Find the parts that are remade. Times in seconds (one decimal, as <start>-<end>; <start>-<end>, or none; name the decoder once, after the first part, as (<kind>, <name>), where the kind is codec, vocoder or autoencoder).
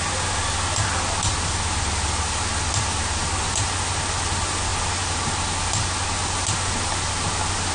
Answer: none